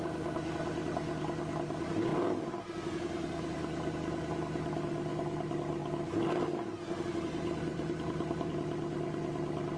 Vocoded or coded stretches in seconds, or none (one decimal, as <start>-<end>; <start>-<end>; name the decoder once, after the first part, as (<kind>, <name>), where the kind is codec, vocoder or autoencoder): 7.7-8.5 (vocoder, BigVGAN v2)